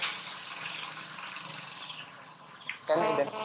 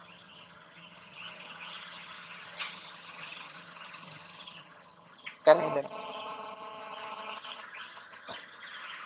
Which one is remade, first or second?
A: second